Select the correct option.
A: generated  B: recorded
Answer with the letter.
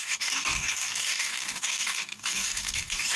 A